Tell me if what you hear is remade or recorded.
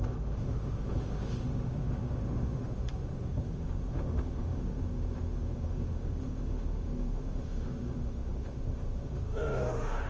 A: remade